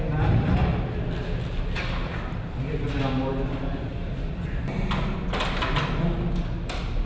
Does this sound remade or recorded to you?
recorded